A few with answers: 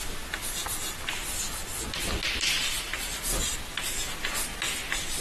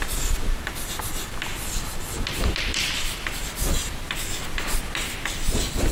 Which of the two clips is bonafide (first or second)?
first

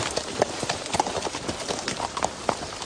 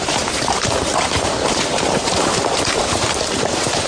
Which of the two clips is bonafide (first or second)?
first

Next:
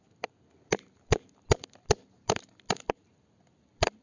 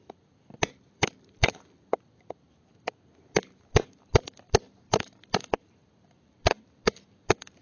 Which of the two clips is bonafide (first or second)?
first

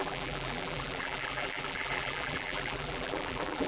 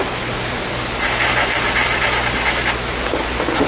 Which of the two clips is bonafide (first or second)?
second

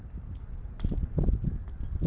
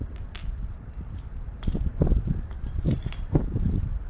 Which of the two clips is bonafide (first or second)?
first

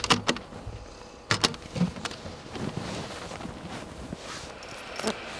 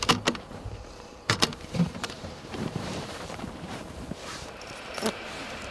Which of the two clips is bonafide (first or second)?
first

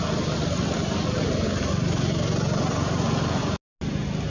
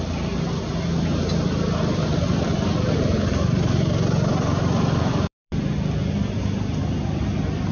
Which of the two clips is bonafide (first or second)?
first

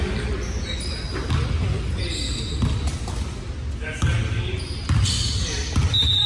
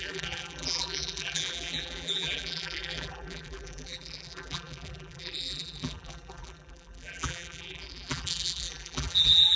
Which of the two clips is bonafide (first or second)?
first